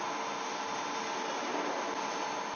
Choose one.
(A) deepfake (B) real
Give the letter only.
B